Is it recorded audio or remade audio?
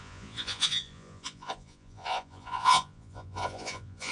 remade